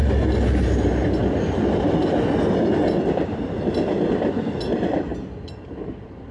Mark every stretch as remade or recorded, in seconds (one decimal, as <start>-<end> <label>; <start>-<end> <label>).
0.0-5.1 recorded; 5.1-6.3 remade